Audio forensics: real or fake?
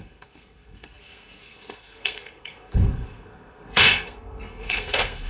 fake